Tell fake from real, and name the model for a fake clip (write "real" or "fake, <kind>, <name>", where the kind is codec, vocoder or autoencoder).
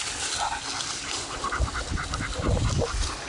real